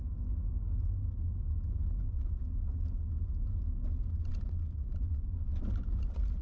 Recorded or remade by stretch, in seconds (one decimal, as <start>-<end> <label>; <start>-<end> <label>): 0.0-6.4 recorded